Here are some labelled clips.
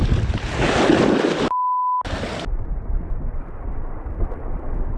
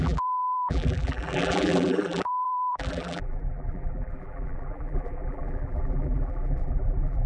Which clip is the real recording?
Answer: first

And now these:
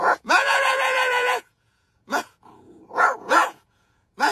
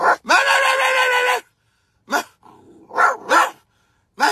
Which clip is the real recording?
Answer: second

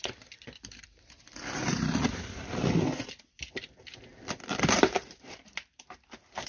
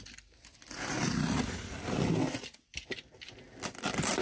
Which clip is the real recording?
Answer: second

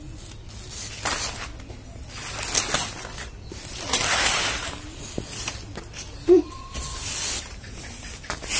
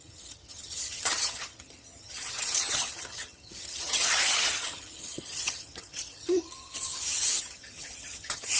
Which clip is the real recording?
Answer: first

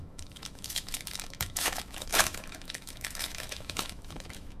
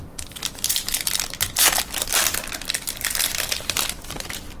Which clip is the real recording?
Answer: second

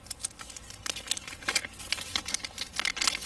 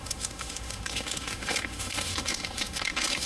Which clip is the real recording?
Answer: first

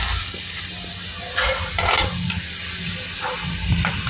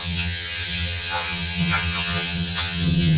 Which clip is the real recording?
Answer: first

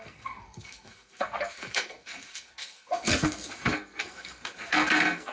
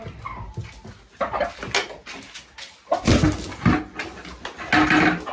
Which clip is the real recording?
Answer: second